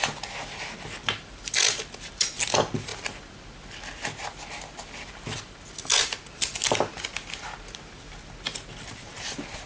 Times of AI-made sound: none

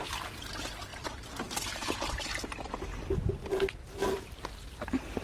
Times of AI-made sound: 0.9-2.8 (vocoder, BigVGAN v2); 3.8-4.5

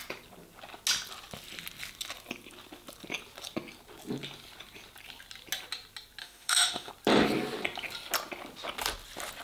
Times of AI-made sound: 6.2-6.9 (autoencoder, DAC-VAE)

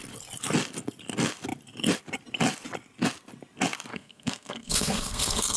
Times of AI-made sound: 3.9-5.6 (codec, SNAC)